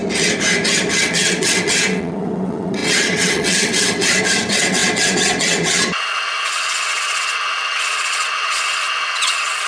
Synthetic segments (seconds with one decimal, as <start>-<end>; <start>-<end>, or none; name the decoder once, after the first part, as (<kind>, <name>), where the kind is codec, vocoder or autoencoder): 1.0-9.7 (vocoder, WaveNeXt)